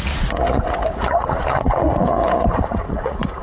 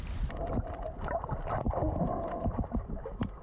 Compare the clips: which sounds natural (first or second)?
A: second